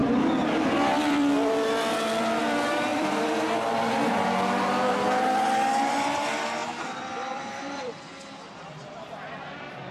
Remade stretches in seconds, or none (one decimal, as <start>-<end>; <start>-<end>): 2.9-3.5; 6.6-7.9